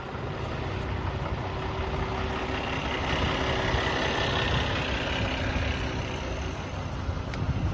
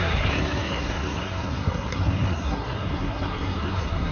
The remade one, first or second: second